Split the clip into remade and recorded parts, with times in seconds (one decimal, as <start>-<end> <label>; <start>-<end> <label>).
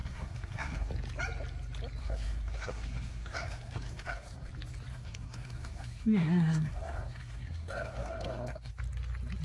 0.0-0.9 remade; 0.9-2.0 recorded; 2.0-4.5 remade; 4.5-4.9 recorded; 4.9-8.7 remade; 8.7-9.4 recorded